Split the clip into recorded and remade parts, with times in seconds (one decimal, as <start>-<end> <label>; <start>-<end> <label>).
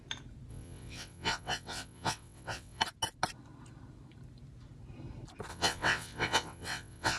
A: 0.0-0.5 recorded; 0.5-2.8 remade; 2.8-5.5 recorded; 5.5-7.2 remade